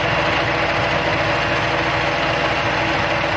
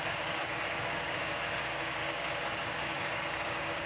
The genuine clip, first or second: first